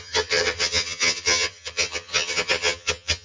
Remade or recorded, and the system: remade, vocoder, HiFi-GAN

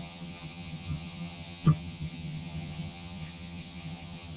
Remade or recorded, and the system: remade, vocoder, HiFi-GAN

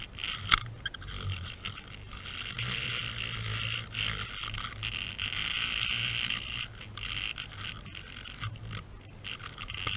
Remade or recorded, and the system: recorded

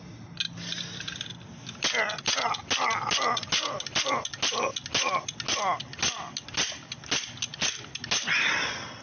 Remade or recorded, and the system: recorded